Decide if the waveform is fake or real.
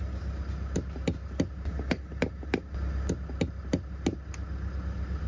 real